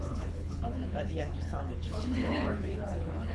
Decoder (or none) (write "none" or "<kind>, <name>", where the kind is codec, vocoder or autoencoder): codec, HILCodec